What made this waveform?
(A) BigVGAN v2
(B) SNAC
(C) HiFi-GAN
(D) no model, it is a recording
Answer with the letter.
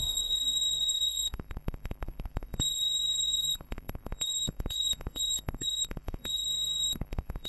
B